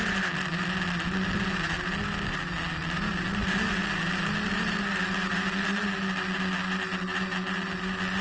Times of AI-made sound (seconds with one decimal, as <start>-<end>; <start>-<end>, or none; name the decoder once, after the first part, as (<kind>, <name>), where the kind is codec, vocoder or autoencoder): none